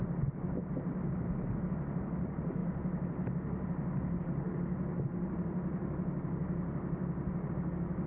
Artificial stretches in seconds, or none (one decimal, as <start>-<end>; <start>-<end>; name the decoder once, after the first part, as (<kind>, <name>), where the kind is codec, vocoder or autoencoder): none